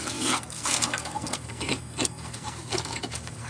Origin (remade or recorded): remade